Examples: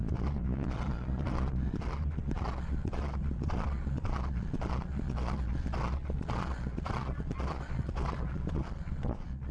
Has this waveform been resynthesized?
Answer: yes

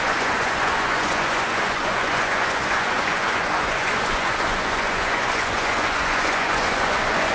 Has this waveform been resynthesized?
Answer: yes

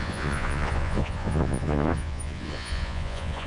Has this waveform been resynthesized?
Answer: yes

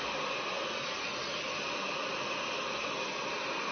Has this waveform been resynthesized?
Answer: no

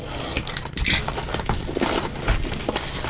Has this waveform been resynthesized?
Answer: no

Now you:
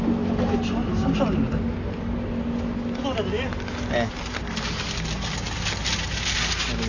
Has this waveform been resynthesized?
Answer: no